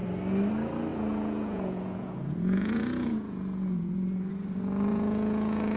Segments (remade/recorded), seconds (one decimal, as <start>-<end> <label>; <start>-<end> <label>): 0.0-0.9 recorded; 0.9-4.3 remade; 4.3-4.9 recorded; 4.9-5.8 remade